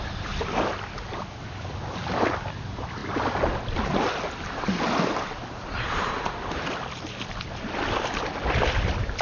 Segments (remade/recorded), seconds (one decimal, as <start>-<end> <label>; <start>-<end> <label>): 0.0-9.2 recorded